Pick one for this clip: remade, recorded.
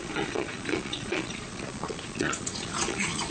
remade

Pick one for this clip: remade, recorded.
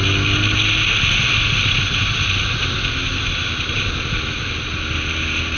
recorded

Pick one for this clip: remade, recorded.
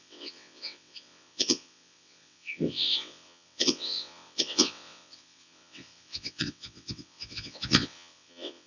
remade